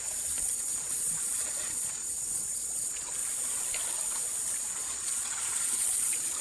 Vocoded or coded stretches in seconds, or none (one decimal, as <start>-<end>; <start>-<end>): 0.0-3.2; 4.6-6.4